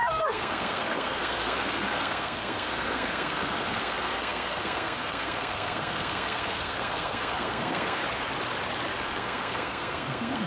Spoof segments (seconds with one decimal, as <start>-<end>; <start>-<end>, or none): 0.0-8.0; 8.9-10.5